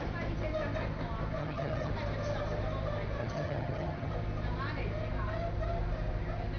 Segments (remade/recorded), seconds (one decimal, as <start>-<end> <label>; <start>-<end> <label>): 0.0-1.4 recorded; 1.4-1.9 remade; 1.9-3.2 recorded; 3.2-4.1 remade; 4.1-6.6 recorded